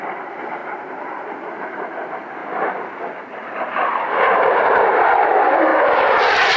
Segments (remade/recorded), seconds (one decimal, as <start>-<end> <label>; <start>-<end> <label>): 0.0-6.6 remade